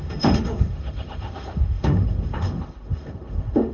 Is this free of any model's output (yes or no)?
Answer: no